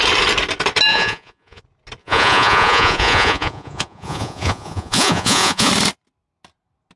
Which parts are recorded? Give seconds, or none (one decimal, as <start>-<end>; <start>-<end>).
0.0-0.9; 1.6-2.0; 5.7-7.0